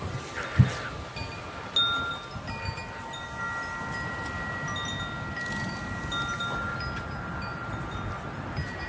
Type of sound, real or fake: real